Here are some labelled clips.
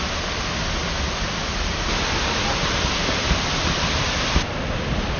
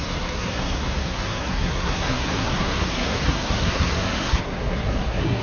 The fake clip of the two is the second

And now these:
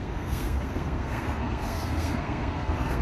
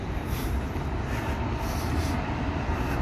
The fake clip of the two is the first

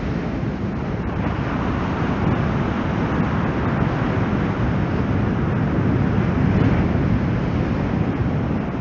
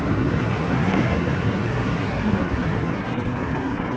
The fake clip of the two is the second